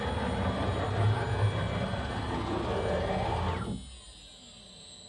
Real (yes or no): yes